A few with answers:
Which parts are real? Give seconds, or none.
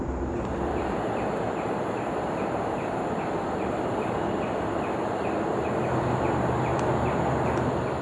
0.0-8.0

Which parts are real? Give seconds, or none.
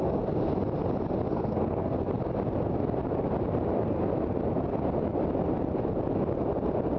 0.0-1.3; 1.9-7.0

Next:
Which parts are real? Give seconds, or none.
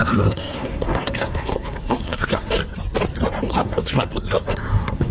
2.6-3.4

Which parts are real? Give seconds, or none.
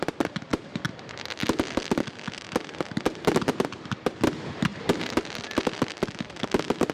0.0-6.9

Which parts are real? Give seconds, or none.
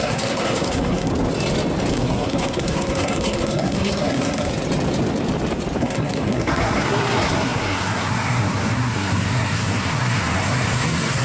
1.1-1.9; 4.5-5.8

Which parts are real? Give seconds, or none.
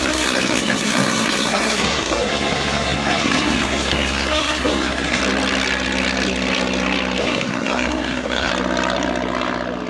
5.2-7.2; 8.5-9.9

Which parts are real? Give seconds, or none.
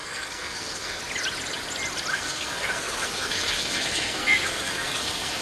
1.0-2.1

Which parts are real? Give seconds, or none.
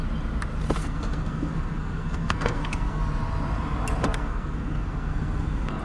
0.0-0.8; 3.0-4.2